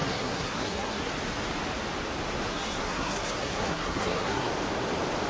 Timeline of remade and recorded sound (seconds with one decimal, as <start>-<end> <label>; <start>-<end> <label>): 0.0-1.1 remade; 1.1-2.5 recorded; 2.5-4.5 remade; 4.5-5.3 recorded